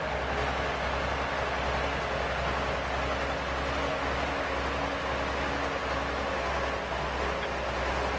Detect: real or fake real